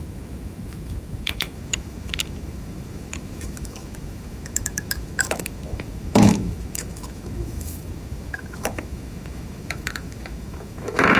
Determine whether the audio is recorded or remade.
remade